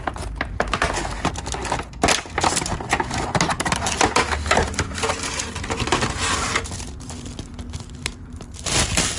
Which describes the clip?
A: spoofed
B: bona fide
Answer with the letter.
B